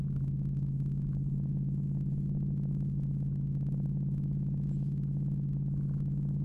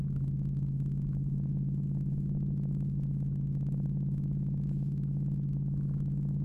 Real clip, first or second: first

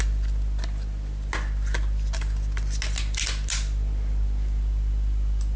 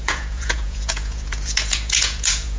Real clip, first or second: first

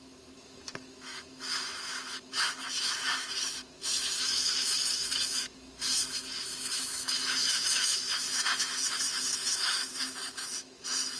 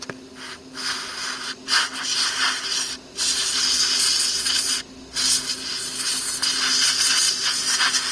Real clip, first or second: second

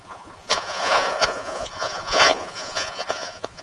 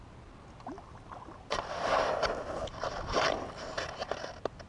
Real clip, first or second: second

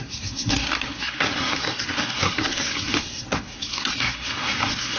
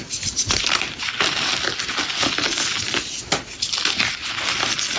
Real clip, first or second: second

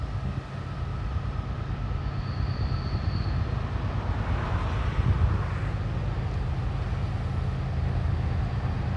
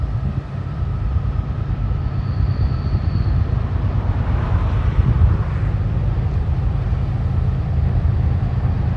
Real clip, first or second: first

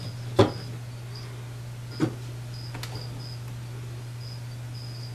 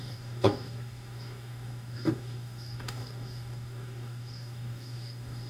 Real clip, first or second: first